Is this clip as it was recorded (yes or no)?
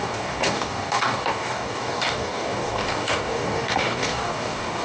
no